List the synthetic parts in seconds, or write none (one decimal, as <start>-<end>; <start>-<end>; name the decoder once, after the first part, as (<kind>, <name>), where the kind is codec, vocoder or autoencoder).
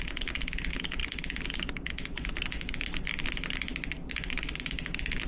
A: none